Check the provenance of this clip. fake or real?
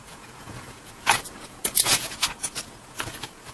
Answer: fake